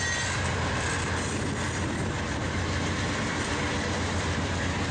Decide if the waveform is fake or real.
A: real